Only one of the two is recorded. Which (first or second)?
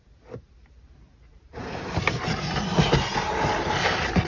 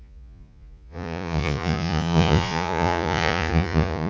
first